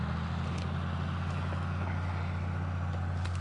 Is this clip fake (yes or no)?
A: no